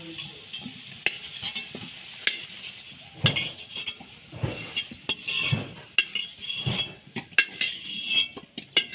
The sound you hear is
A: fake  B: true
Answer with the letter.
B